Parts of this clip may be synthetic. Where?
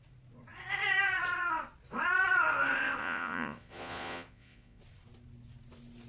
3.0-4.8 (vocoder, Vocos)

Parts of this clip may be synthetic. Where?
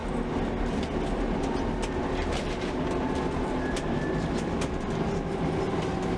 none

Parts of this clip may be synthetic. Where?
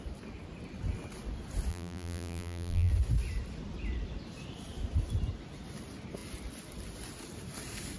1.7-2.9 (vocoder, BigVGAN v2)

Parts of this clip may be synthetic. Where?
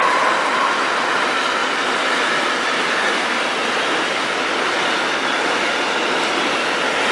none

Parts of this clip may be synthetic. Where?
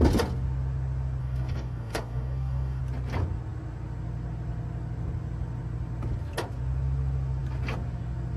1.2-2.8 (codec, DAC)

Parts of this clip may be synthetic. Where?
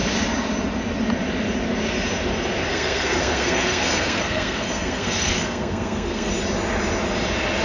2.7-6.3 (codec, SNAC)